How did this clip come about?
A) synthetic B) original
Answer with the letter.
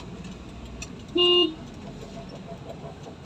B